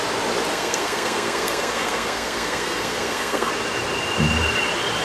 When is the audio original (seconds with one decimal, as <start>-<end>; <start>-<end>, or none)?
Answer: 0.0-0.5; 3.5-5.0